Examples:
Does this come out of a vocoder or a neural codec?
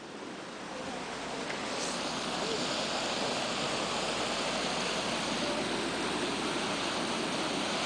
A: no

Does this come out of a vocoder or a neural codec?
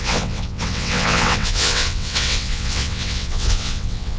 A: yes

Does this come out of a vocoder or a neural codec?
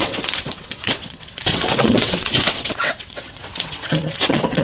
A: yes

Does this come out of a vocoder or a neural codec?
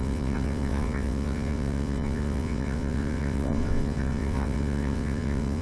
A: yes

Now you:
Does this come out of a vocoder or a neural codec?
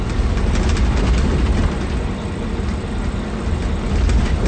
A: no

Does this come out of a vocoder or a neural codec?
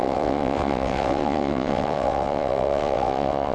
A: yes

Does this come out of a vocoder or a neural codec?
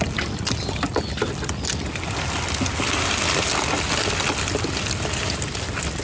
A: no